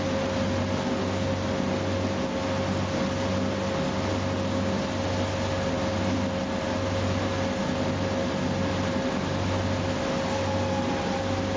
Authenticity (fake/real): real